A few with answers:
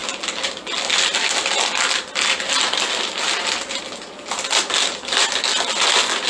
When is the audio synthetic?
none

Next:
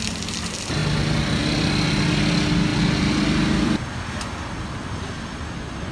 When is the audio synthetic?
0.8-1.4 (vocoder, BigVGAN v2); 2.7-3.8

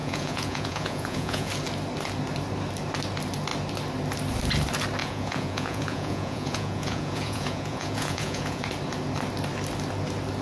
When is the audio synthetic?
0.0-1.5 (vocoder, Vocos); 5.0-8.6